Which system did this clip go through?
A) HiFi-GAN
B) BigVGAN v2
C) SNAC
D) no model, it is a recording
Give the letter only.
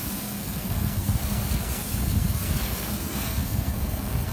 C